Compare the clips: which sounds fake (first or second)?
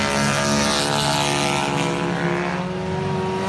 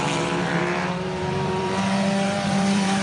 second